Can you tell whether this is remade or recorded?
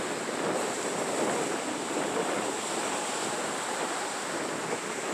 recorded